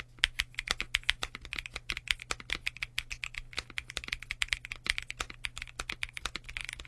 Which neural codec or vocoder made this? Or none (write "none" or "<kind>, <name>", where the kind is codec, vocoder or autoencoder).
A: none